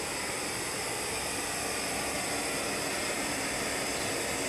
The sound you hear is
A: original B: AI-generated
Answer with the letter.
A